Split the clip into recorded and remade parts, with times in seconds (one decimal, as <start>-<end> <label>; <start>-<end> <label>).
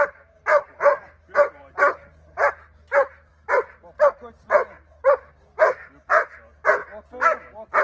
0.0-7.8 recorded